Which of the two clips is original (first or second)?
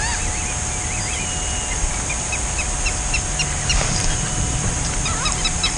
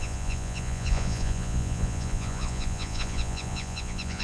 first